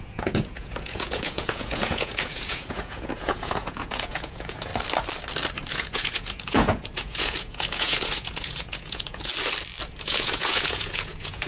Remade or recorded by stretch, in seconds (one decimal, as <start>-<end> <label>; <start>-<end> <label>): 0.0-4.7 remade; 4.7-5.7 recorded; 5.7-9.3 remade; 9.3-9.9 recorded; 9.9-11.5 remade